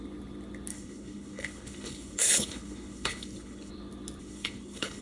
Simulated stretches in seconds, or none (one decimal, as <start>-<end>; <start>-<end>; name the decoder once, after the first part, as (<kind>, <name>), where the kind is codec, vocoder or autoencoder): 0.7-3.7 (codec, HILCodec); 4.2-5.0